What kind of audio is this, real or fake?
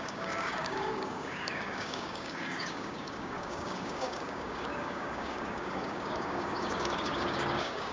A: fake